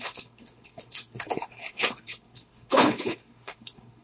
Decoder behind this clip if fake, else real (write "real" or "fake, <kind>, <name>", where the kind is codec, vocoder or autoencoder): fake, codec, HILCodec